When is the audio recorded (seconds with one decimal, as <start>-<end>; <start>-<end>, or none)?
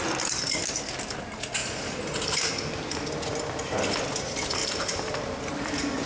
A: 0.0-6.1